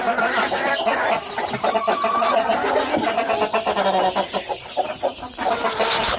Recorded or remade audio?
recorded